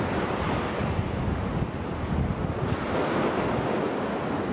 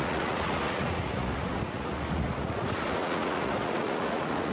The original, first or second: first